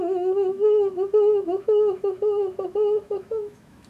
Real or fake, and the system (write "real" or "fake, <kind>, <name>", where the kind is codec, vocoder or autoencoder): fake, autoencoder, DAC-VAE